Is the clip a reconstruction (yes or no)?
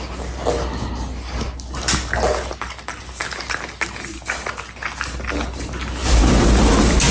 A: no